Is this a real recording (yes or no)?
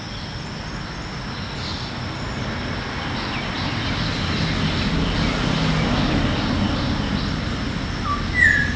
yes